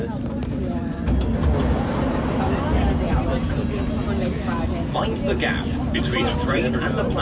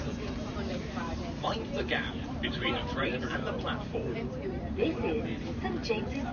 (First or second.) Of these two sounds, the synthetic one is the second